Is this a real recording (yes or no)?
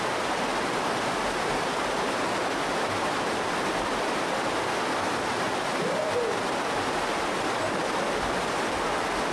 yes